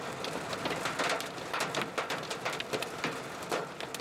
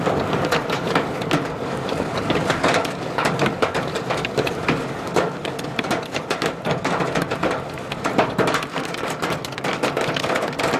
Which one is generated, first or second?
second